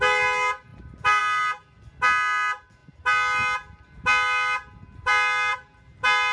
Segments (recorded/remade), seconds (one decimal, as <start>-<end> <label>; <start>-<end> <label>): 0.0-6.3 recorded

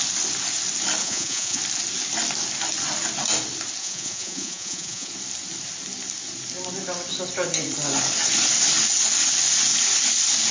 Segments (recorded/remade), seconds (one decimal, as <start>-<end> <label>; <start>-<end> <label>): 0.0-1.0 recorded; 1.0-1.6 remade; 1.6-3.8 recorded; 3.8-5.1 remade; 5.1-10.5 recorded

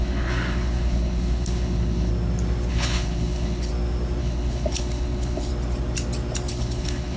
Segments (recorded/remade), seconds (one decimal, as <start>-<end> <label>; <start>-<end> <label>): 0.0-2.1 remade; 2.1-2.7 recorded; 2.7-3.7 remade; 3.7-4.2 recorded; 4.2-5.5 remade; 5.5-6.5 recorded; 6.5-7.2 remade

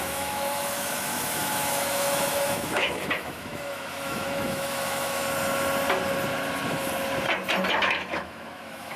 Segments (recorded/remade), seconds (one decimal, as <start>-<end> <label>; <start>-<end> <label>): 0.0-5.2 remade; 5.2-7.8 recorded; 7.8-9.0 remade

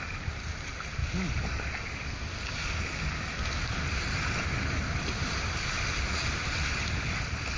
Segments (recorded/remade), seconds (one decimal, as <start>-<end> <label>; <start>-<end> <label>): 0.0-7.6 recorded

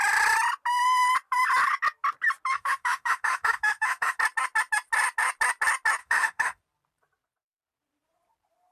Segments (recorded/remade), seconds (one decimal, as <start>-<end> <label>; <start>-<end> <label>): 0.0-2.5 recorded; 2.5-4.2 remade; 4.2-6.0 recorded; 6.0-6.6 remade; 6.6-8.7 recorded

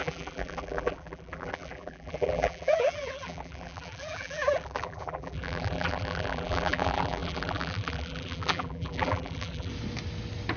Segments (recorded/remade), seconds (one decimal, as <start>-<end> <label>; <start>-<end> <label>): 0.0-9.7 remade; 9.7-10.6 recorded